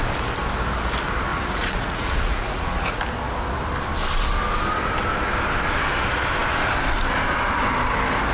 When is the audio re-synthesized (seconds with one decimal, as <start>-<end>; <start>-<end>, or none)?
1.3-3.0